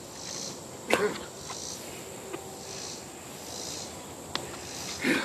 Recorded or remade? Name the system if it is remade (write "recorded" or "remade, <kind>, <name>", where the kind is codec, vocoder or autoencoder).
recorded